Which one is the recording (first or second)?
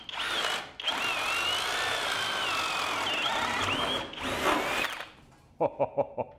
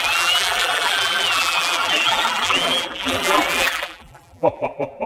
first